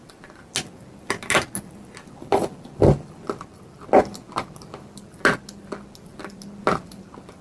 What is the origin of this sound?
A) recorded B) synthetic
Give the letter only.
A